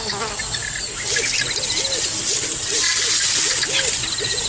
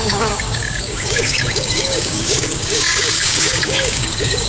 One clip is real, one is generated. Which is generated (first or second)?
second